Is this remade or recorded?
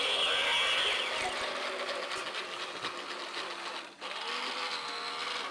recorded